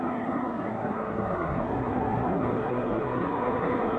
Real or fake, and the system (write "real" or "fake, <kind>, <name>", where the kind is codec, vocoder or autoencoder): fake, codec, SNAC